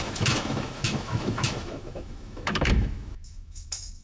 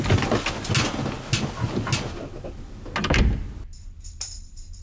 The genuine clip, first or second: second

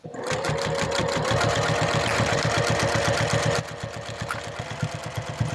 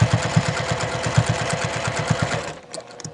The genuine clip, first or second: second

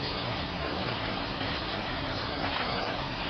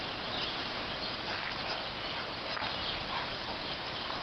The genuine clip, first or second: second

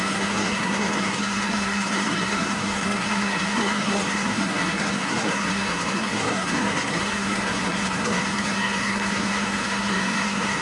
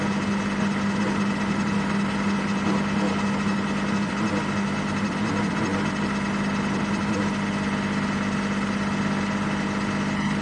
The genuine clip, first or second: second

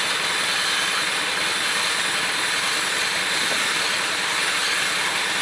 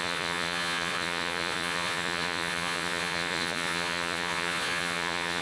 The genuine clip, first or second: first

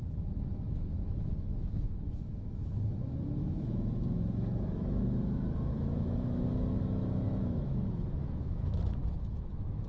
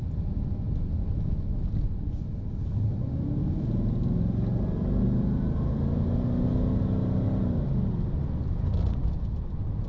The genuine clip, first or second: second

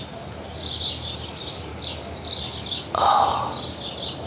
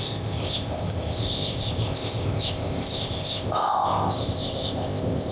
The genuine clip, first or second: first